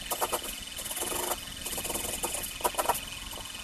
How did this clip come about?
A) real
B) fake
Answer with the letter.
A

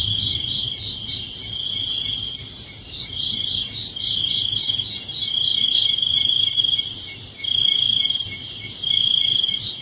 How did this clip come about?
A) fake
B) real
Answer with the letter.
A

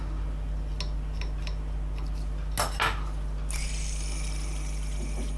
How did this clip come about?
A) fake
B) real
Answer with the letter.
B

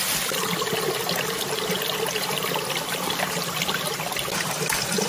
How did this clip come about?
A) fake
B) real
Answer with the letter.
B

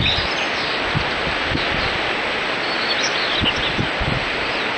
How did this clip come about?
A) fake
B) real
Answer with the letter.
B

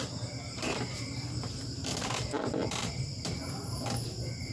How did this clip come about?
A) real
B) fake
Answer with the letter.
B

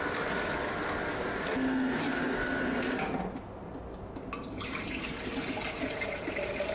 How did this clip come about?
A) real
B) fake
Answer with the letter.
A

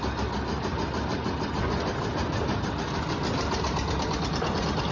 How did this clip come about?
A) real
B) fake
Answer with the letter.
A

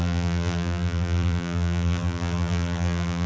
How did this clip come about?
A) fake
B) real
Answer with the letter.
A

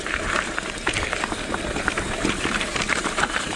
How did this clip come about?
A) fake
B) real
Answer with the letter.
A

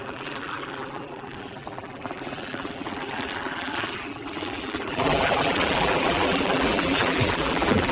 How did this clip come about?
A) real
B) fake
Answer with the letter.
B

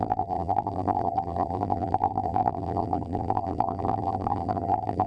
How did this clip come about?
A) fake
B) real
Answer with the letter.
A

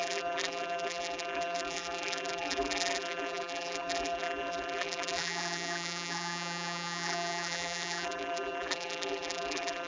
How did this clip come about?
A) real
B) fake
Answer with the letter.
B